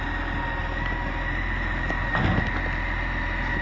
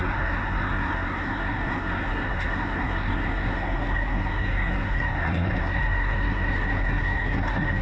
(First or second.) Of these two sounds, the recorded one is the first